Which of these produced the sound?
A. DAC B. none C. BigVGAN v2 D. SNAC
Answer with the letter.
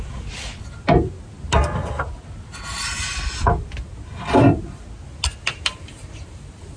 B